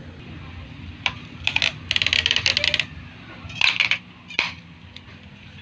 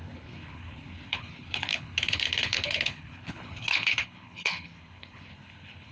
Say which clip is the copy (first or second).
second